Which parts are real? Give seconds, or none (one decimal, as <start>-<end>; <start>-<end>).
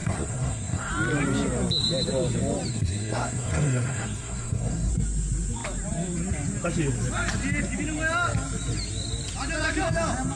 0.9-2.7; 4.9-10.4